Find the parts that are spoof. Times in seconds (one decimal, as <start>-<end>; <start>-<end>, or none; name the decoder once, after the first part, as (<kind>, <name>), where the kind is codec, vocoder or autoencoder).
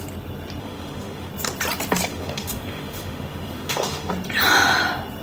0.6-1.3 (autoencoder, DAC-VAE); 2.1-4.1